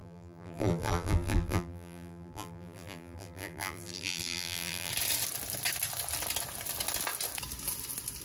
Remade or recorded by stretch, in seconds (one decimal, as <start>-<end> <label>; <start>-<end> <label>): 0.0-4.9 remade; 4.9-8.2 recorded